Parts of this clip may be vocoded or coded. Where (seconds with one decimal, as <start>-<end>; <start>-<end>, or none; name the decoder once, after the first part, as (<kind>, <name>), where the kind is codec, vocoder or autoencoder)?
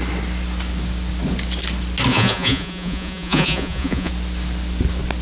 2.1-4.1 (vocoder, Vocos)